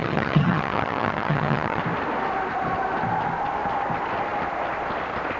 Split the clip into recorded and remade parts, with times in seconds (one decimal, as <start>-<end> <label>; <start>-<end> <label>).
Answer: 0.0-1.8 remade; 1.8-5.4 recorded